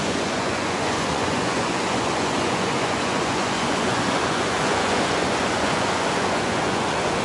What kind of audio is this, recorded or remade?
remade